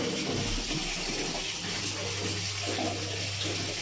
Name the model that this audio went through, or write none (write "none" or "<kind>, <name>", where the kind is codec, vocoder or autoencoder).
none